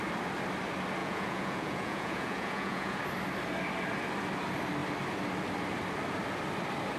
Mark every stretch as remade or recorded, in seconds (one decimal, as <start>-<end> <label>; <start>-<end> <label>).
0.0-1.0 recorded; 1.0-3.0 remade; 3.0-7.0 recorded